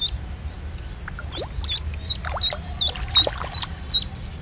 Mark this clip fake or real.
real